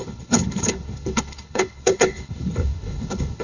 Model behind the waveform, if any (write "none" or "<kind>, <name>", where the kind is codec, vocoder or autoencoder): codec, HILCodec